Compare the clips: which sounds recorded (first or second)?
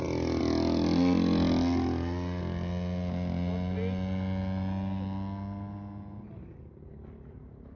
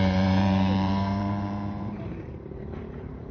first